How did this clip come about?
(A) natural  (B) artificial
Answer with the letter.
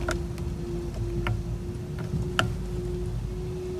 A